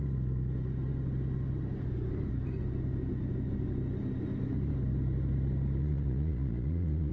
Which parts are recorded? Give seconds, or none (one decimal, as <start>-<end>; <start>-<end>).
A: 0.0-5.8

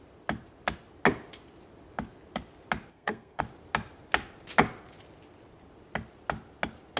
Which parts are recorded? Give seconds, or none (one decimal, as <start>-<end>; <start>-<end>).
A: 0.0-2.9; 3.4-7.0

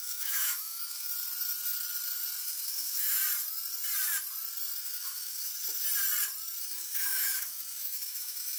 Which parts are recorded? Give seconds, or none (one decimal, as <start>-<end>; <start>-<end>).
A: 1.1-2.4; 3.2-4.8; 5.5-6.6

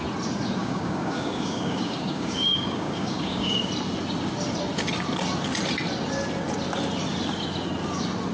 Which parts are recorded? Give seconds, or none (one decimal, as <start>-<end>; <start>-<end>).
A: 0.0-0.6; 3.7-8.3

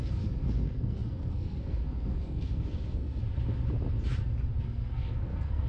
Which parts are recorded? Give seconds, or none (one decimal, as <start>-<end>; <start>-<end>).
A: 3.2-4.6

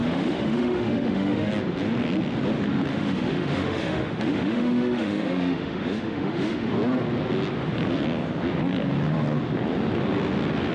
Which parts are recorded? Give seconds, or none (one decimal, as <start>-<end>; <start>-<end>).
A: 1.5-2.9; 6.7-10.7

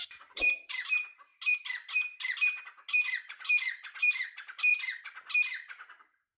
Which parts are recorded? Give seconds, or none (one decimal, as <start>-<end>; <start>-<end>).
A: 1.3-4.0; 4.7-6.0

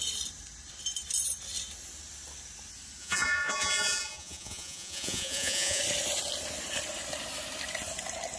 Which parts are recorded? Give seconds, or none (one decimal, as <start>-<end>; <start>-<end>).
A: 0.0-3.0; 5.8-8.4